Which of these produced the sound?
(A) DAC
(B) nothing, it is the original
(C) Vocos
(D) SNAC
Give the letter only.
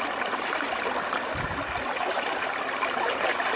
B